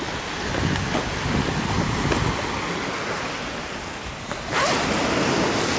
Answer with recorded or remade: recorded